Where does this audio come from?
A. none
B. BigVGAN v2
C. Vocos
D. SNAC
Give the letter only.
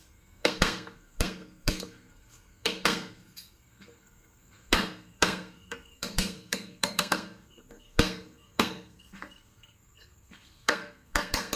D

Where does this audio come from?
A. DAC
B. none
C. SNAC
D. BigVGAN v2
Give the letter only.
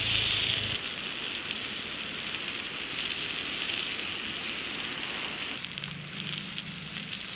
B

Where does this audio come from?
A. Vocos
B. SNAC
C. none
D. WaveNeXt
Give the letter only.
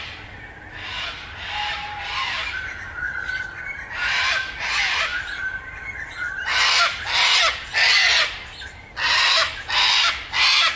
C